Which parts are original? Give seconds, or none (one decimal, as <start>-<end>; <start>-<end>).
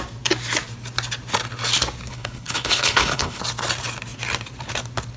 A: 0.0-2.1; 3.4-5.2